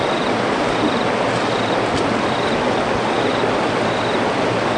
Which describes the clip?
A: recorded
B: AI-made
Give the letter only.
A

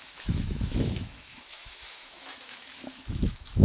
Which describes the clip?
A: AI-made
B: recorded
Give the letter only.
A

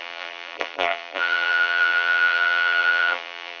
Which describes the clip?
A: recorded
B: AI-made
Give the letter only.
B